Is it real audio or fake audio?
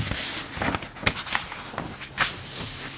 real